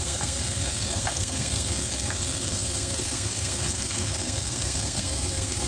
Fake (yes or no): yes